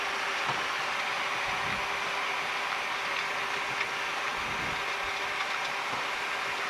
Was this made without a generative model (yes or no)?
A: yes